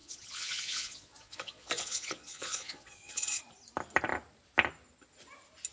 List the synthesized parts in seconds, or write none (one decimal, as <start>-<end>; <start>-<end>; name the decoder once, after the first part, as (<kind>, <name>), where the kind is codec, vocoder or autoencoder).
0.0-3.4 (vocoder, Vocos)